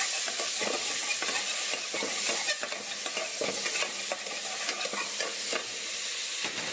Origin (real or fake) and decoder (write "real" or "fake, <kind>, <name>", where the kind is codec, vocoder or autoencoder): real